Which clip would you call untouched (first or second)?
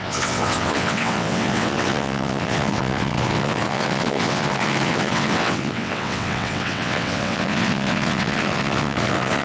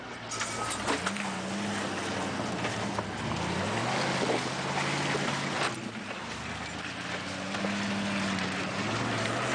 second